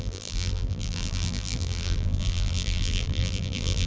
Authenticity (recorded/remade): remade